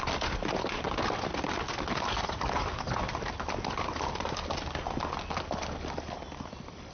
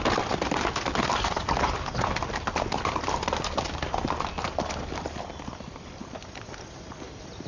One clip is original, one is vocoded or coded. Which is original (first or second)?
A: first